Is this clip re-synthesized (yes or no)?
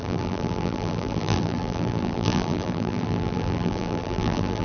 yes